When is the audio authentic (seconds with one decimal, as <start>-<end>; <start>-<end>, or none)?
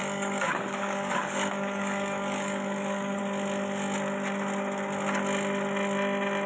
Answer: 3.2-6.5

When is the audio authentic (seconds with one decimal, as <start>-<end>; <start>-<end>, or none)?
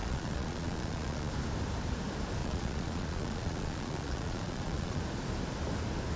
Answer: 1.3-2.4; 5.0-6.2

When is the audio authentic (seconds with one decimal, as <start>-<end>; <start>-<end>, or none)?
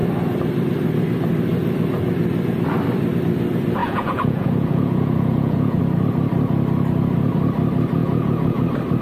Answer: 0.0-3.8; 5.8-8.0; 8.6-9.0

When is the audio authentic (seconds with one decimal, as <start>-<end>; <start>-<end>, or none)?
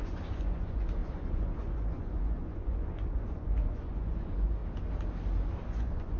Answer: 4.6-5.7